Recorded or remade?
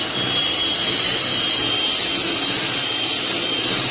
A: recorded